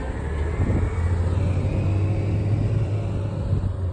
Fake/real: real